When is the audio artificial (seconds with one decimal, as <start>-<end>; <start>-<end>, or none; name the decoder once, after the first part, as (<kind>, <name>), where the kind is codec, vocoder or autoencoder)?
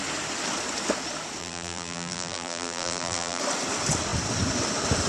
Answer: 1.4-3.4 (vocoder, BigVGAN v2)